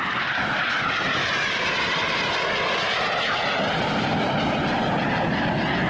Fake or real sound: real